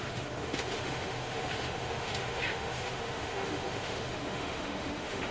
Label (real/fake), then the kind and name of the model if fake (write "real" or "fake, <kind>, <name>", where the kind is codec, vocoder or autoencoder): fake, autoencoder, DAC-VAE